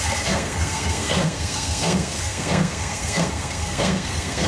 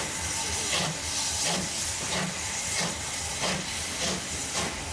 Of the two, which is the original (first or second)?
second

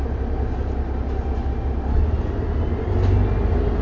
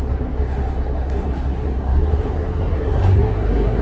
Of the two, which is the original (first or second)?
first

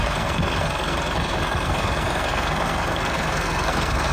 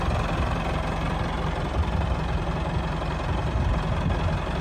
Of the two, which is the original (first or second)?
second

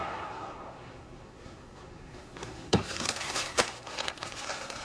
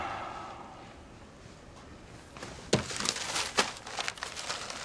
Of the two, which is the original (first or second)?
second